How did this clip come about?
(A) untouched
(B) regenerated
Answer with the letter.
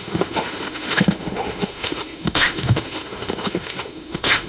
B